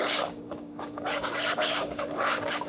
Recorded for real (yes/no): no